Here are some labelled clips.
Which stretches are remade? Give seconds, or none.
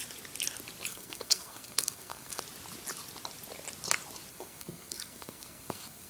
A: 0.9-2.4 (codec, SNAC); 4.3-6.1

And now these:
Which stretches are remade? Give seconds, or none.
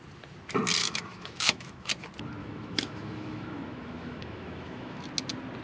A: 0.8-1.9 (autoencoder, DAC-VAE); 2.4-5.0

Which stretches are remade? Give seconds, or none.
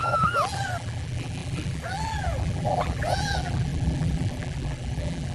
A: 0.0-5.3 (vocoder, BigVGAN v2)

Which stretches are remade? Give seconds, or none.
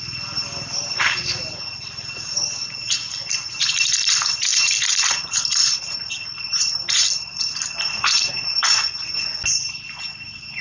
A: 4.5-8.3 (vocoder, BigVGAN v2)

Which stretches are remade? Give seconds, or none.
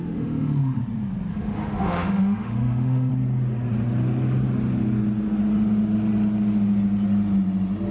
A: 0.0-0.8 (autoencoder, DAC-VAE); 1.3-3.1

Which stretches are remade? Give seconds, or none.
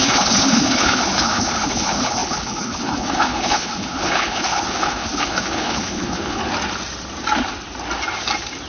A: 0.0-6.4 (codec, HILCodec)